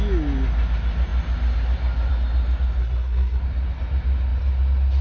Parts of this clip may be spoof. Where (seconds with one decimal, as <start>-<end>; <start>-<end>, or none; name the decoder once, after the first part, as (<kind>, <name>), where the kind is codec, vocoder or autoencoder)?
2.8-3.4 (codec, SNAC)